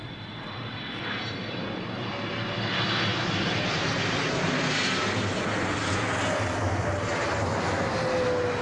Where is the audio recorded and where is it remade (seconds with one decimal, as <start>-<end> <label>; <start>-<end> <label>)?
0.0-8.6 recorded